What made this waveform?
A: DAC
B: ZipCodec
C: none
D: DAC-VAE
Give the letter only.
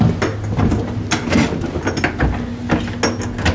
C